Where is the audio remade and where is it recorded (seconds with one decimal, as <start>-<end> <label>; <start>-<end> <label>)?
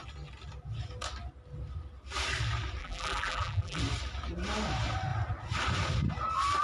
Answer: 0.0-2.8 recorded; 2.8-3.8 remade; 3.8-6.6 recorded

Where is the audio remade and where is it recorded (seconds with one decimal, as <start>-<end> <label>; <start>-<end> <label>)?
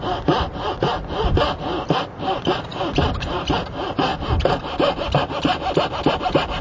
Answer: 0.0-6.6 recorded